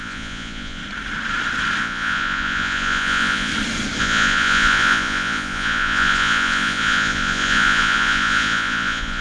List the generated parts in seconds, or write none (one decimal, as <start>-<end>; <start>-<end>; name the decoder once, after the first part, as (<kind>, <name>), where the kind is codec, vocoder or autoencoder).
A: 0.0-0.8 (vocoder, Vocos); 1.8-3.5; 4.0-9.2